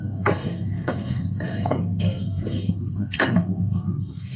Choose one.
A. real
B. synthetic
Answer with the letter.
B